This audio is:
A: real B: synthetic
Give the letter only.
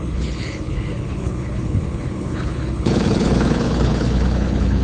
B